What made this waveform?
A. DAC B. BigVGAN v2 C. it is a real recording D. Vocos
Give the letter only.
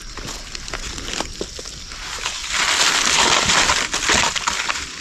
C